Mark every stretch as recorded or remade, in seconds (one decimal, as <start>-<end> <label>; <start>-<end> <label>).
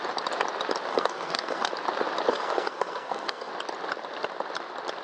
0.0-0.9 recorded; 0.9-1.7 remade; 1.7-2.3 recorded; 2.3-3.5 remade; 3.5-5.0 recorded